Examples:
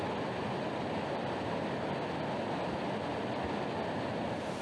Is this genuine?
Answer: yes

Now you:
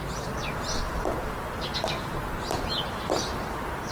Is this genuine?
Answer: yes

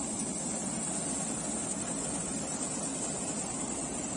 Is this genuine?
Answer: yes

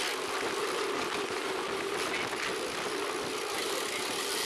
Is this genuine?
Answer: yes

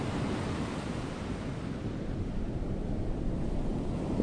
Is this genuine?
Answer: yes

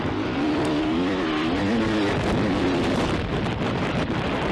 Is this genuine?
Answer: no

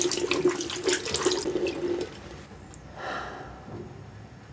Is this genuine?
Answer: yes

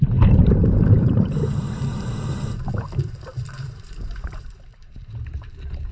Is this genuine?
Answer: no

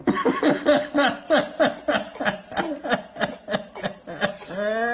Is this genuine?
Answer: yes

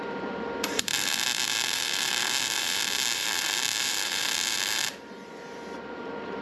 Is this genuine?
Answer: no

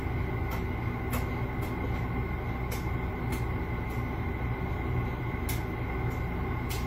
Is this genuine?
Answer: yes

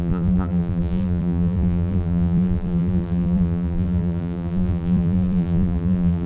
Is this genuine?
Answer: no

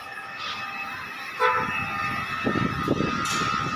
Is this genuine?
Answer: yes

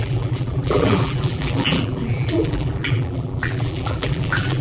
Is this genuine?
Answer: no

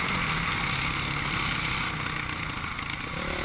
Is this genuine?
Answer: yes